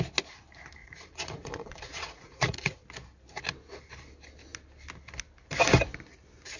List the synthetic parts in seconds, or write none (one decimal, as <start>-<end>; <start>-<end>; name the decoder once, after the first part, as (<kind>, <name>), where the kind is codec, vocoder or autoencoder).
0.8-2.8 (vocoder, Vocos)